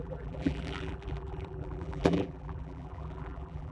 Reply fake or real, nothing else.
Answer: fake